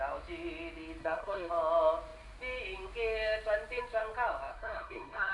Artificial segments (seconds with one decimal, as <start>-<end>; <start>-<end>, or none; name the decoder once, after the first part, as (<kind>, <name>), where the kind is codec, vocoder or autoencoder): 1.0-1.5 (codec, SNAC); 4.5-5.3